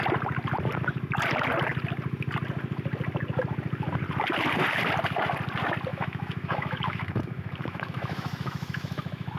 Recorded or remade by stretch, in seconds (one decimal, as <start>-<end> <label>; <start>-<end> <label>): 0.0-5.9 recorded; 5.9-9.4 remade